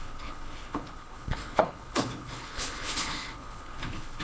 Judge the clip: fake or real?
fake